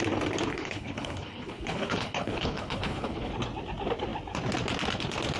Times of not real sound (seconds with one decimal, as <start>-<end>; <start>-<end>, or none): 0.5-3.3